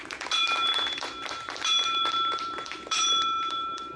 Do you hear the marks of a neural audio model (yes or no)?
yes